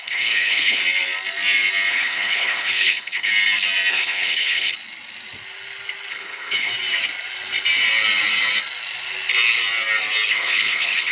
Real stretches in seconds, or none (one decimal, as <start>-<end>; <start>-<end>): 0.8-1.9; 3.3-3.9; 4.7-6.1; 6.7-10.3